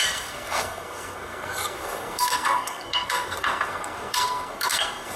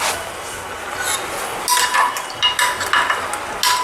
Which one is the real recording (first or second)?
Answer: second